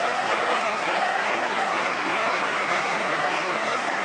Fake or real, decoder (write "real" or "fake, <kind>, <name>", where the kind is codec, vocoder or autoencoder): fake, codec, SNAC